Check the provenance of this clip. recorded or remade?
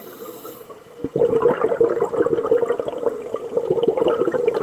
recorded